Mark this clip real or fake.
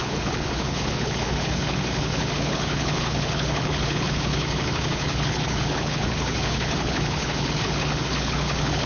fake